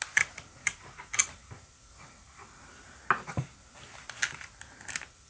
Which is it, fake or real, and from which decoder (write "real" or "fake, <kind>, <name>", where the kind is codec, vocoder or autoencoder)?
real